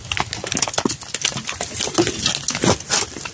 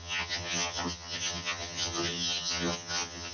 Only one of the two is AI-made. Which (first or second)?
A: second